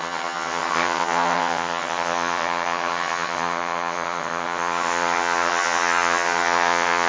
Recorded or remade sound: remade